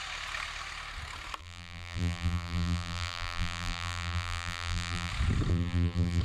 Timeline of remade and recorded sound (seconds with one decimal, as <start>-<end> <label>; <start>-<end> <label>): 0.0-1.4 recorded; 1.4-5.1 remade; 5.1-5.5 recorded; 5.5-6.2 remade